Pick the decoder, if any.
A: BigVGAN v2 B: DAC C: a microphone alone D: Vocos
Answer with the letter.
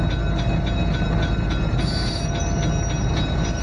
C